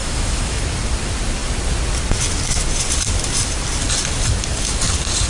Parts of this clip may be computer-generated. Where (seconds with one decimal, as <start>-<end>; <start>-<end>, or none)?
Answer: 0.0-0.6